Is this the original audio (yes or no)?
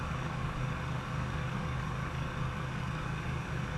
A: no